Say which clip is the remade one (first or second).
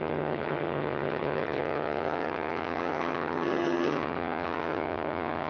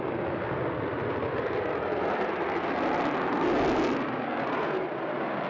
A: first